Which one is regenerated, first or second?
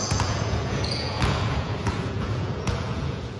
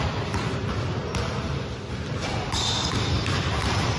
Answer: first